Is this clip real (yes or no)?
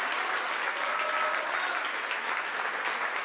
yes